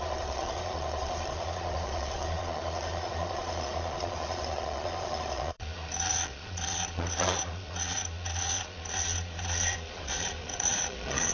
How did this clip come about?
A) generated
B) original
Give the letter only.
A